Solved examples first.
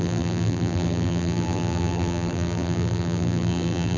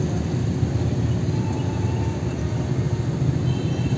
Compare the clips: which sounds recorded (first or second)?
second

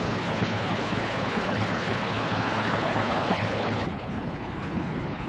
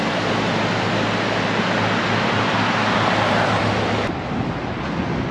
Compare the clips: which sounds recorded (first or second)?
second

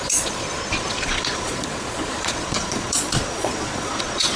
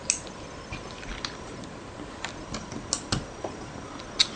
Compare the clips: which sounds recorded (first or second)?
second